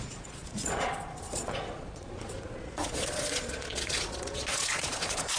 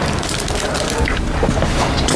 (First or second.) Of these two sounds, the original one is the second